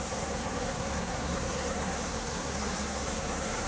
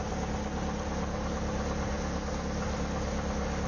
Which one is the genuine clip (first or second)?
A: second